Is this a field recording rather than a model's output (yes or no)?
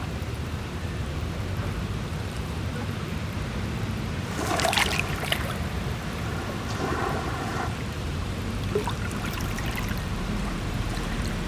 no